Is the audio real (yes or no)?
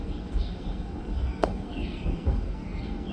no